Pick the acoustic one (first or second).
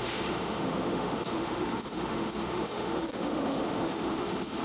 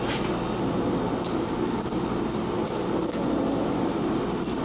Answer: second